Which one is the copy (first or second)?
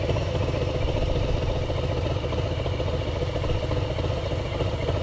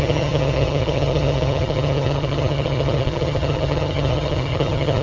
second